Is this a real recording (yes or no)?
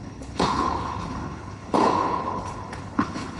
no